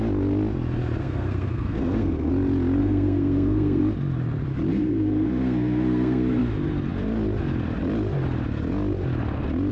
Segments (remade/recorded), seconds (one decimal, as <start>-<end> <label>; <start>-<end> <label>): 0.0-1.0 recorded; 1.0-2.3 remade; 2.3-2.8 recorded; 2.8-3.8 remade; 3.8-4.7 recorded; 4.7-6.4 remade; 6.4-9.7 recorded